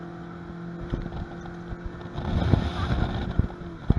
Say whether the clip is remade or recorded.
recorded